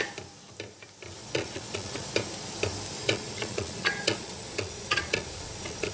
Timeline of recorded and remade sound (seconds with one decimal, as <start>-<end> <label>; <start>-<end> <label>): 0.0-1.2 recorded; 1.2-2.1 remade; 2.1-3.0 recorded; 3.0-5.9 remade